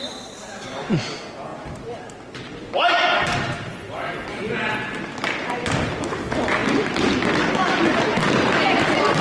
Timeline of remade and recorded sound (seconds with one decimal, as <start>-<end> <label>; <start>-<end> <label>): 0.0-9.2 recorded